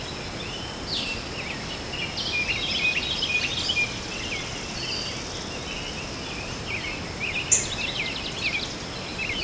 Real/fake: real